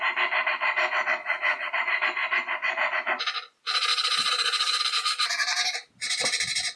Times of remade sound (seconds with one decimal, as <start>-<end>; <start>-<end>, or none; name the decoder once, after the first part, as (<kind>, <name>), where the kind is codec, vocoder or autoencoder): 1.2-1.7 (vocoder, Vocos); 3.9-4.8